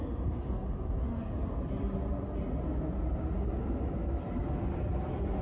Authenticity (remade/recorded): recorded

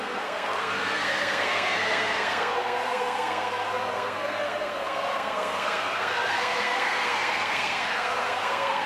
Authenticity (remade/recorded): remade